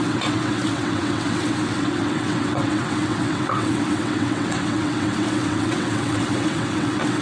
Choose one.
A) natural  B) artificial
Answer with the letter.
B